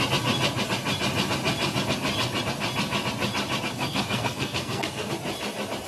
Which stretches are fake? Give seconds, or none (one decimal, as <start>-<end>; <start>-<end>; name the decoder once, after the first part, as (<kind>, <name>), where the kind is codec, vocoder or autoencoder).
3.7-5.1 (codec, SNAC)